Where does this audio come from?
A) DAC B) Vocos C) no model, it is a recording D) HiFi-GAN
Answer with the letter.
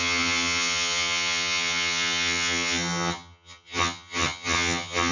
D